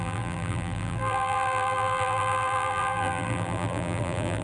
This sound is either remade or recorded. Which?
remade